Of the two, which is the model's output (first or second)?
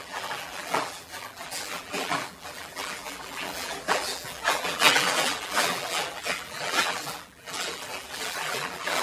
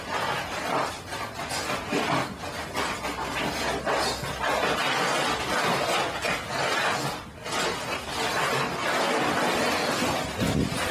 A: first